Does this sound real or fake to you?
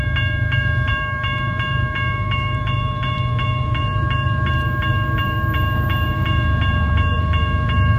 fake